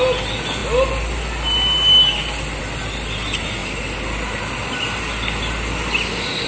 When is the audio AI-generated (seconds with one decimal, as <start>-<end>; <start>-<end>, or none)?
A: none